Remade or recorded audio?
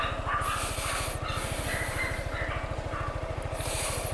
recorded